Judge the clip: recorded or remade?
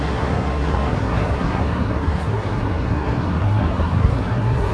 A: remade